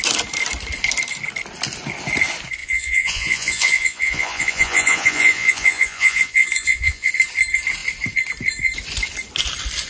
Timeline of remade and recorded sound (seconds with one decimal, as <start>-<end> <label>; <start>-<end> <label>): 0.0-2.6 recorded; 2.6-7.1 remade; 7.1-9.9 recorded